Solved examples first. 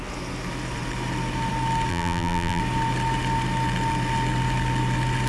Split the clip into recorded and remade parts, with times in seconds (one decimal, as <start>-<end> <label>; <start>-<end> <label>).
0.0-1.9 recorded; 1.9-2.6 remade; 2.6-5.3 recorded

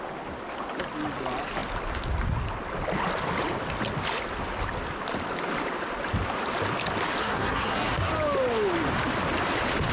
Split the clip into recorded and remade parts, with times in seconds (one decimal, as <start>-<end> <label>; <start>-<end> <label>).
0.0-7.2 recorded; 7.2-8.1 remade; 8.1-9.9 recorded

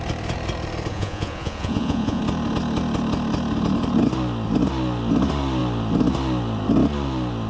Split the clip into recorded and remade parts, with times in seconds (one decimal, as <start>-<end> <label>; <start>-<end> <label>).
0.0-0.9 recorded; 0.9-2.2 remade; 2.2-7.5 recorded